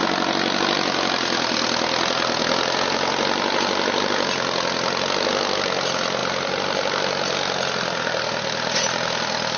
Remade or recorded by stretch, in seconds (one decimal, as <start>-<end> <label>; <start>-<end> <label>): 0.0-9.6 recorded